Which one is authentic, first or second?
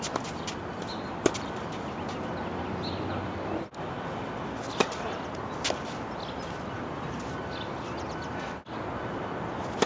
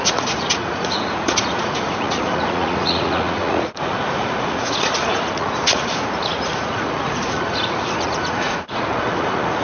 first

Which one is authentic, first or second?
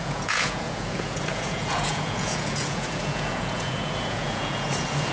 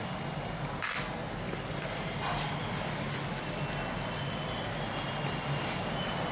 second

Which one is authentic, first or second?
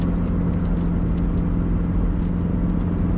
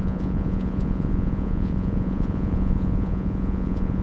first